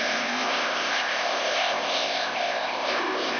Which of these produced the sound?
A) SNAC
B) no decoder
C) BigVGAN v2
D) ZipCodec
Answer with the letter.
D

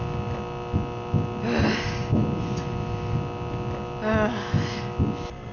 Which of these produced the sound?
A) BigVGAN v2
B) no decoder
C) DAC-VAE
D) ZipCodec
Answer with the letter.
B